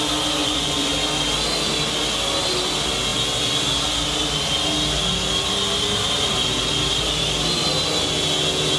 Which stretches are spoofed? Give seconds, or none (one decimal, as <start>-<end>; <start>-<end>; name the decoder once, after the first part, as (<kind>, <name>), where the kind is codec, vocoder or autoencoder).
0.4-0.9 (vocoder, Vocos)